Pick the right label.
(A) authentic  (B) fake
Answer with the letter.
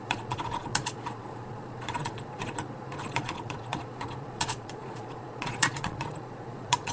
B